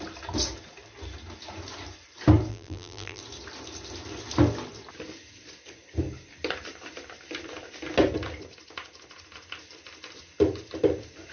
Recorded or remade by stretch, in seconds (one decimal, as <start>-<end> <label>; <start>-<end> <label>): 0.0-2.5 recorded; 2.5-3.2 remade; 3.2-11.3 recorded